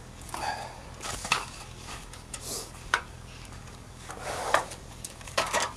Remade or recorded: remade